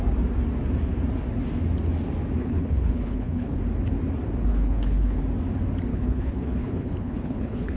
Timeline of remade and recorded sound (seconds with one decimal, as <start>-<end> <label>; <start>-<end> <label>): 0.0-2.4 recorded; 2.4-3.6 remade; 3.6-4.5 recorded; 4.5-5.2 remade; 5.2-5.9 recorded; 5.9-7.8 remade